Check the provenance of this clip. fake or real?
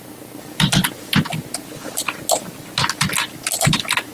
real